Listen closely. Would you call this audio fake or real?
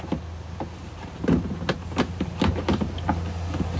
real